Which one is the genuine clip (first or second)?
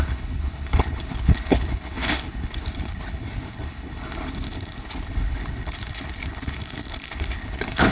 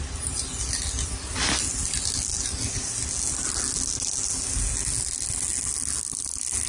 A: second